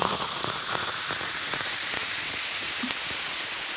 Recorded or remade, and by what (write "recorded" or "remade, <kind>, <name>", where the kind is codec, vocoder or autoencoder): remade, vocoder, Vocos